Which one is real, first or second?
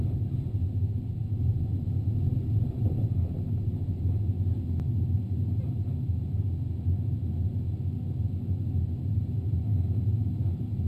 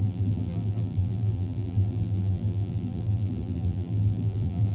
first